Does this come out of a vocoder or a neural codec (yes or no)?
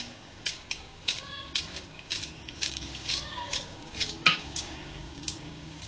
yes